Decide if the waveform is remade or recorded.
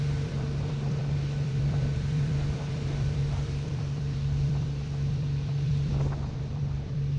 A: remade